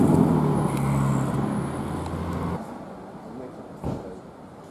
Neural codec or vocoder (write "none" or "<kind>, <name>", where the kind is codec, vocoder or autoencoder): none